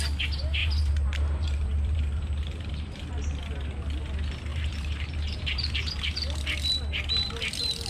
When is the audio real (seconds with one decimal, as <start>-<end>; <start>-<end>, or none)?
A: 0.0-0.6; 3.1-4.5; 5.9-7.9

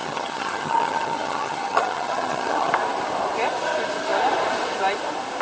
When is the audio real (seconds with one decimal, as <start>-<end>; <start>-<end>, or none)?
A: 2.7-5.4

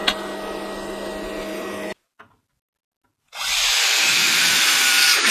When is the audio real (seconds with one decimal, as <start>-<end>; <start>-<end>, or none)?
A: 0.0-4.1

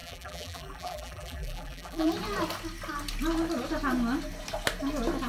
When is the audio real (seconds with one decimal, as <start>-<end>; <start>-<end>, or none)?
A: 2.1-5.3

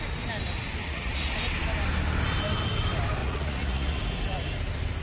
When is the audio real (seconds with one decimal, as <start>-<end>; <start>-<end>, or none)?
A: 0.0-0.8; 1.3-3.2; 4.0-5.0

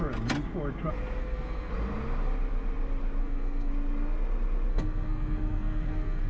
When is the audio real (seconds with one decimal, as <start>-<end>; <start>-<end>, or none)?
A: 0.0-1.2; 1.7-3.2; 3.7-4.7

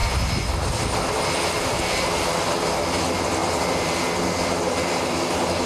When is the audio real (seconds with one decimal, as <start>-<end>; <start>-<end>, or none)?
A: 0.0-5.7

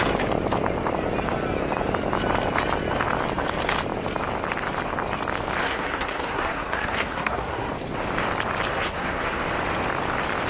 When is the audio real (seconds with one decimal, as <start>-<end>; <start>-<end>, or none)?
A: 0.0-5.6; 7.7-8.7; 9.4-10.5